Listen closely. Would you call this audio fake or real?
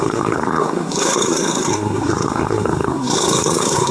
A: fake